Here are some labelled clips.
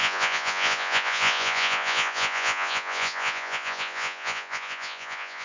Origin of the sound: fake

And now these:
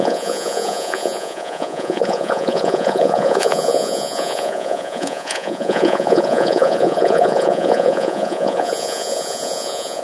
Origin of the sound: fake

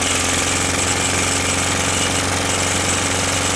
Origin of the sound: real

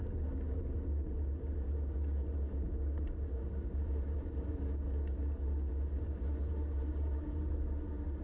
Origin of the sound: real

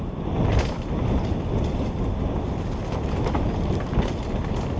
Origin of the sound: real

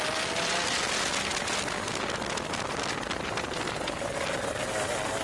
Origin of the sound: real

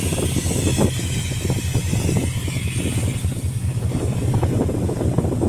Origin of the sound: real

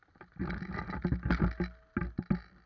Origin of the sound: real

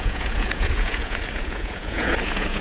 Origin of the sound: fake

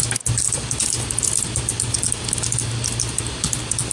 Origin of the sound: real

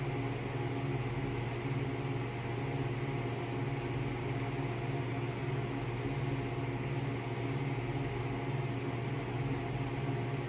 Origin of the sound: real